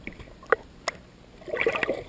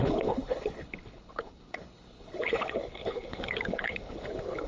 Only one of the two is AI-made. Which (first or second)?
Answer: second